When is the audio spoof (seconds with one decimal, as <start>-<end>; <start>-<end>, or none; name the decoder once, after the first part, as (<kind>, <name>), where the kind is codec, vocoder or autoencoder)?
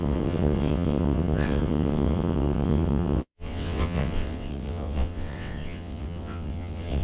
0.0-7.0 (vocoder, WaveNeXt)